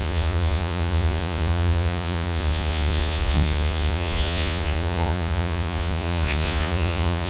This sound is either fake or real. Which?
fake